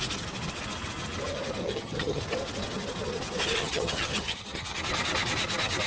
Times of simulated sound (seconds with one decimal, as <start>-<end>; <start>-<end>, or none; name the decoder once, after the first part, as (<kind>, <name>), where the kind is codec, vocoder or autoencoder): 1.6-2.2 (vocoder, HiFi-GAN); 3.6-4.8